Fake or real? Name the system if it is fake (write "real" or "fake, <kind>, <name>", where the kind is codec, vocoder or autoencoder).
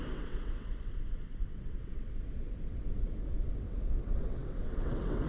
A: fake, vocoder, WaveNeXt